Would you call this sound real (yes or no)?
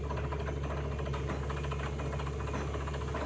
yes